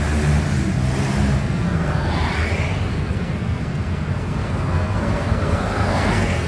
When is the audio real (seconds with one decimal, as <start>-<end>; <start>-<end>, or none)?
0.0-1.4; 2.1-2.9